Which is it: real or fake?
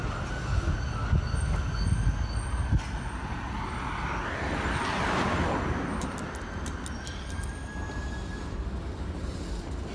real